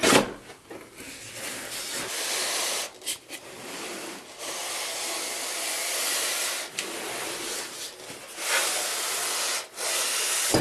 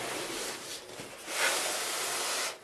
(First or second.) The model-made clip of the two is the second